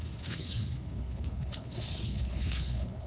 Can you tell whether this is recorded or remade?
remade